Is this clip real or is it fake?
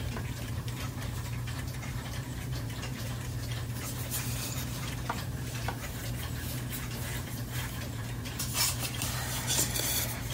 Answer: fake